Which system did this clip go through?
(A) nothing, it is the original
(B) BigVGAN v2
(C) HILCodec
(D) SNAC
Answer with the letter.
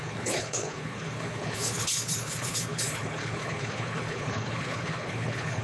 C